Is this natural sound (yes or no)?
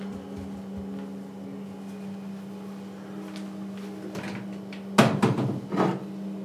yes